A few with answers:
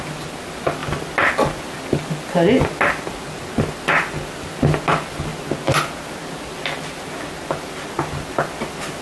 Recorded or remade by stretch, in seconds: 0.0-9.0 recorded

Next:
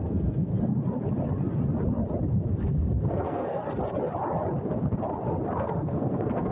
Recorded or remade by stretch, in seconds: 0.0-0.5 remade; 0.5-2.5 recorded; 2.5-3.6 remade; 3.6-5.6 recorded; 5.6-6.5 remade

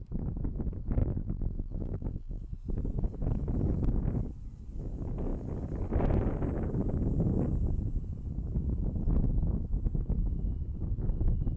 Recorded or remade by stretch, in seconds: 0.0-1.0 recorded; 1.0-2.4 remade; 2.4-11.6 recorded

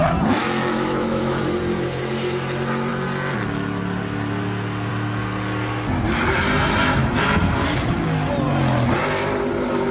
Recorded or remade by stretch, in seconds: 0.0-0.4 recorded; 0.4-1.4 remade; 1.4-9.9 recorded

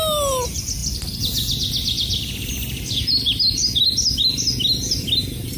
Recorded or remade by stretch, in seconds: 0.0-5.6 recorded

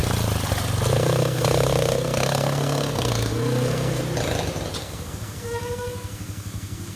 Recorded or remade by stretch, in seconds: 0.0-0.9 recorded; 0.9-4.0 remade; 4.0-4.8 recorded; 4.8-7.0 remade

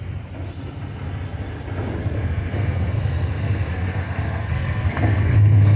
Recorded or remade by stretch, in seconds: 0.0-2.0 recorded; 2.0-5.8 remade

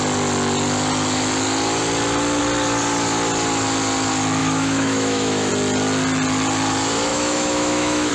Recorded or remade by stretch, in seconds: 0.0-4.4 recorded; 4.4-5.5 remade; 5.5-7.1 recorded; 7.1-8.1 remade